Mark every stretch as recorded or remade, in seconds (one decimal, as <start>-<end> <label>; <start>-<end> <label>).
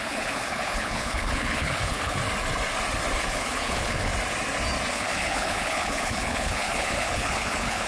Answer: 0.0-2.2 remade; 2.2-3.2 recorded; 3.2-4.1 remade; 4.1-4.9 recorded; 4.9-7.9 remade